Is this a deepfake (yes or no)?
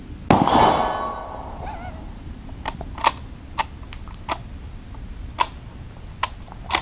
no